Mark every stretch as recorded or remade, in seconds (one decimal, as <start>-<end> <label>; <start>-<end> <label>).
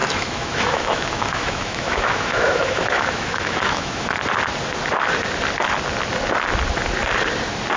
0.0-4.1 remade; 4.1-7.8 recorded